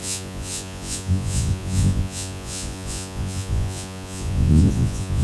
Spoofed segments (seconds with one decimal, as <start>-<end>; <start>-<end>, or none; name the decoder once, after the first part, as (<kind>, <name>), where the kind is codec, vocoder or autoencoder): 0.0-5.2 (vocoder, Vocos)